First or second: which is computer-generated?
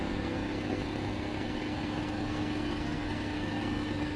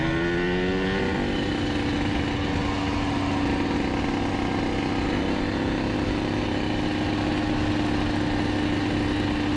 first